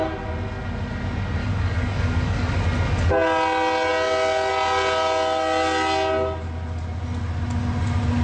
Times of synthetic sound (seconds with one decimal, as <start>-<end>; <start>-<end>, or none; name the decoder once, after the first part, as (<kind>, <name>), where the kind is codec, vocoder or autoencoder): 1.4-2.6 (codec, DAC)